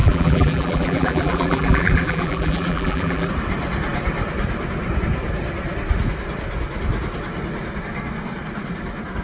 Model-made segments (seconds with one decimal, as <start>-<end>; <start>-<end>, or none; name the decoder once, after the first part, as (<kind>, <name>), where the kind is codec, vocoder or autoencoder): 0.0-3.3 (vocoder, BigVGAN v2)